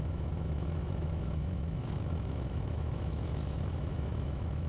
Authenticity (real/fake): fake